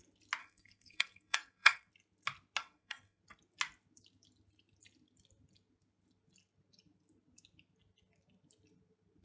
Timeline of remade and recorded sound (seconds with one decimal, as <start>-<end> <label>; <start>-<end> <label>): 0.0-0.4 recorded; 0.4-1.9 remade; 1.9-2.6 recorded; 2.6-3.2 remade; 3.2-9.2 recorded